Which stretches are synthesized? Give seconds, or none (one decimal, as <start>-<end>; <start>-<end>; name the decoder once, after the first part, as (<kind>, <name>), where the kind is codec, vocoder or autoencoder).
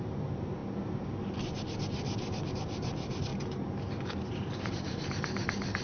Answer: 0.0-0.6 (vocoder, BigVGAN v2); 2.5-3.3; 4.3-5.8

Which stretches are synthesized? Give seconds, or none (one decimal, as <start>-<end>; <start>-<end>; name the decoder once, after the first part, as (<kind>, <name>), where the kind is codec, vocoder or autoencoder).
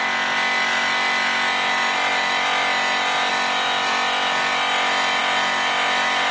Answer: none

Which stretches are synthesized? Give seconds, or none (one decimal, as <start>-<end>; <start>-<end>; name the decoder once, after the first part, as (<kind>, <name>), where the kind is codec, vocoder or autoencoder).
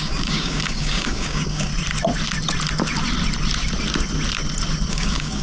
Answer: 0.0-1.7 (codec, DAC); 4.9-5.4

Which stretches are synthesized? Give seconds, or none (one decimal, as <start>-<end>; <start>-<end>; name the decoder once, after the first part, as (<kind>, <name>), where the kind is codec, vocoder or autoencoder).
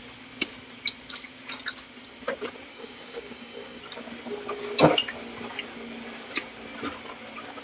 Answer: 2.7-3.8 (codec, DAC)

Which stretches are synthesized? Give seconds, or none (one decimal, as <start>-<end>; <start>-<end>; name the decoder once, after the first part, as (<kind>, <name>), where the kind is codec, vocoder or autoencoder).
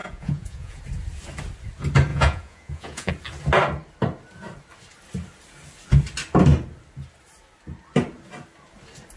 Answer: 0.0-0.8 (vocoder, Vocos); 2.1-3.1